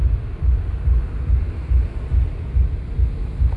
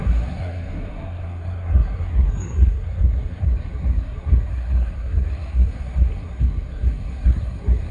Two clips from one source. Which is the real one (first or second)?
first